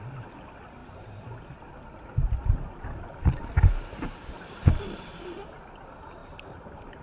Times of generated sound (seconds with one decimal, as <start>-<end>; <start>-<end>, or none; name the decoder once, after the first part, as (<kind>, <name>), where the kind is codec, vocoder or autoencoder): 6.2-7.0 (vocoder, BigVGAN v2)